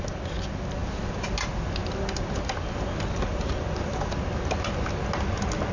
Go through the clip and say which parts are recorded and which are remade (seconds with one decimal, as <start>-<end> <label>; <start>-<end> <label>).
0.0-5.7 recorded